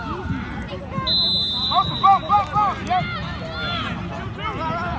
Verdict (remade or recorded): recorded